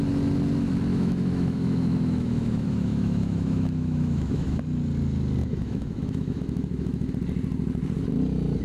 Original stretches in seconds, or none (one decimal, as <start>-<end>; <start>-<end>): 0.0-0.9; 4.6-5.4; 7.1-8.6